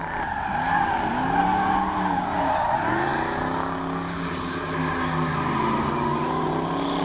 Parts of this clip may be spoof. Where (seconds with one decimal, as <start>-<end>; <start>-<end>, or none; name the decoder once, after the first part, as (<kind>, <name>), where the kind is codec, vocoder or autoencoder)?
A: none